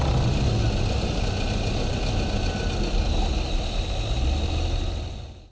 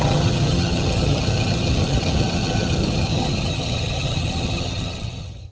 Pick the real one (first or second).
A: first